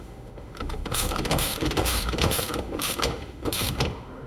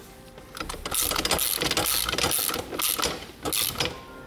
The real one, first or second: second